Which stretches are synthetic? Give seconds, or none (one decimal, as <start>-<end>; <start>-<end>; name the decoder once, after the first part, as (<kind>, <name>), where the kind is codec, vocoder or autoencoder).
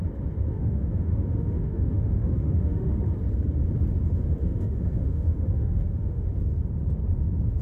0.5-3.0 (autoencoder, DAC-VAE); 4.4-6.3